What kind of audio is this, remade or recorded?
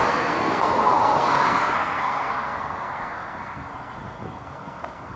remade